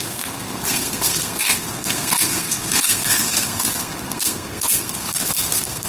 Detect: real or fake fake